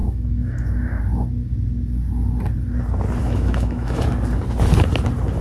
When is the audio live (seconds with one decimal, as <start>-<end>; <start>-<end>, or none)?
1.0-3.2; 4.0-5.4